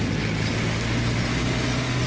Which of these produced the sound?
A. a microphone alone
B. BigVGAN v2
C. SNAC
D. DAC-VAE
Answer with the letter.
A